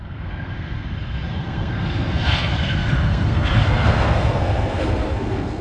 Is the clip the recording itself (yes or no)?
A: no